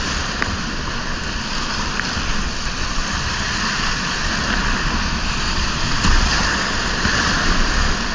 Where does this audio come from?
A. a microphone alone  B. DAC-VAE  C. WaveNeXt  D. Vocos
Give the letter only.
A